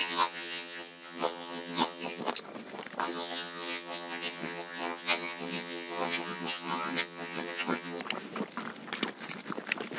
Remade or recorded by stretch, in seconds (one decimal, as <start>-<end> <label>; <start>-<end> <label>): 0.0-2.2 remade; 2.2-3.0 recorded; 3.0-8.0 remade; 8.0-10.0 recorded